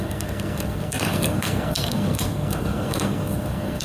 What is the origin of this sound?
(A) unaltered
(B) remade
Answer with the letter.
B